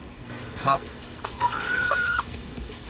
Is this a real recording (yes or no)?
no